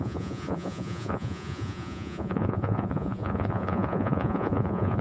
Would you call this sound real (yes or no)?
no